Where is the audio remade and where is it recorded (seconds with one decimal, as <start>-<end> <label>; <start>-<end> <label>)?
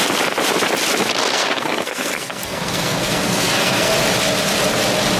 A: 0.0-1.3 recorded; 1.3-3.9 remade; 3.9-5.2 recorded